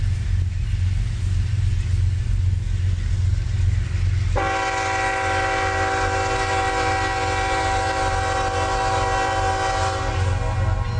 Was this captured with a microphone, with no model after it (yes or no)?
yes